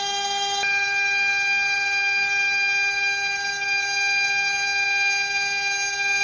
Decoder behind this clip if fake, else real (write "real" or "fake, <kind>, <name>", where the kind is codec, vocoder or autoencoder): real